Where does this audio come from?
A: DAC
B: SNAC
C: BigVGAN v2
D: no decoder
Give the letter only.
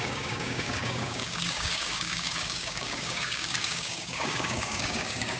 A